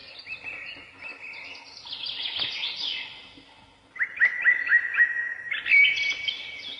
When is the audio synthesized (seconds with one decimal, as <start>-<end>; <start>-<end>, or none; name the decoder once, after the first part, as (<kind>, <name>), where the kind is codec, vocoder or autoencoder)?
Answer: none